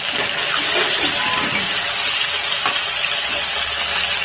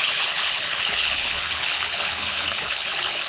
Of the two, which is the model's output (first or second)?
second